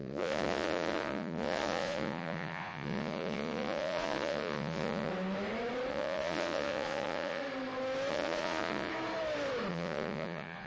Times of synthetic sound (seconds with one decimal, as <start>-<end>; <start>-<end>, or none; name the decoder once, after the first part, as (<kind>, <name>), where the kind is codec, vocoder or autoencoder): 0.0-5.1 (vocoder, Vocos); 5.9-7.4; 8.1-8.9; 9.7-10.7